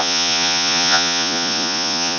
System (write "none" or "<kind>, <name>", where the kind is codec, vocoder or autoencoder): vocoder, Vocos